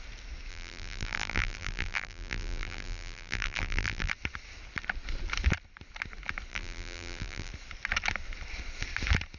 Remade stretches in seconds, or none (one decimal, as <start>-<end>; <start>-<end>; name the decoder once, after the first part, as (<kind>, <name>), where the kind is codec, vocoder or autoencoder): 0.5-4.1 (vocoder, BigVGAN v2); 6.5-7.5